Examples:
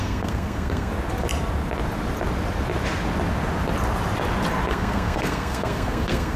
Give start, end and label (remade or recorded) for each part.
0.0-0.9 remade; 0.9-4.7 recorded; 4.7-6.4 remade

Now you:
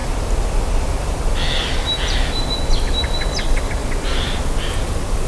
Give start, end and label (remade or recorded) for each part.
0.0-5.3 recorded

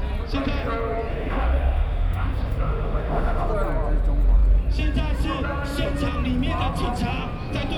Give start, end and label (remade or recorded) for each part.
0.0-1.1 recorded; 1.1-3.5 remade; 3.5-7.8 recorded

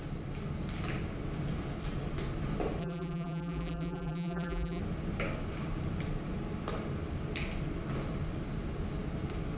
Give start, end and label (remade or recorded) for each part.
0.0-2.8 recorded; 2.8-4.8 remade; 4.8-9.6 recorded

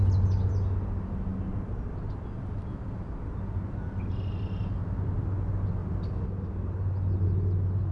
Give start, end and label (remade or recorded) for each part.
0.0-7.9 recorded

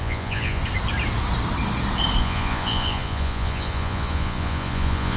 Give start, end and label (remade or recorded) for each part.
0.0-0.6 remade; 0.6-2.2 recorded; 2.2-5.2 remade

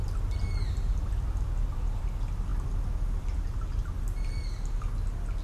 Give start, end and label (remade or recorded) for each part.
0.0-5.4 recorded